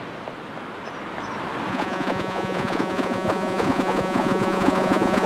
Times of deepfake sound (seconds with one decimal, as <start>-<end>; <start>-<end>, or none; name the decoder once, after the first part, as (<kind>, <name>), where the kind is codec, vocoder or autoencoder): 1.7-5.3 (vocoder, Vocos)